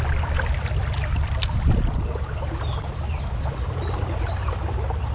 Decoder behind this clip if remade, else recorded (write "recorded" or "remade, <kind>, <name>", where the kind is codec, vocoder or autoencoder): recorded